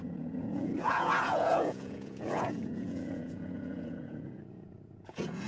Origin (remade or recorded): remade